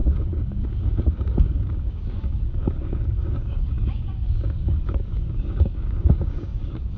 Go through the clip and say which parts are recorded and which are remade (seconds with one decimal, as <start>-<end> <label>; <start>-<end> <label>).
0.0-7.0 remade